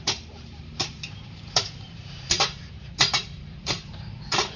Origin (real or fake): fake